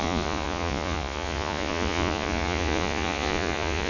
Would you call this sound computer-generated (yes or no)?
yes